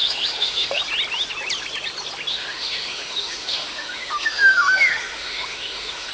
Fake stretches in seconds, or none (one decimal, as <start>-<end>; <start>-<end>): 0.0-0.8; 2.3-6.1